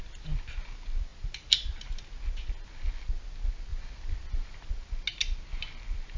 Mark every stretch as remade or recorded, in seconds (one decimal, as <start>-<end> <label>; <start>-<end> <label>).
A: 0.0-6.2 recorded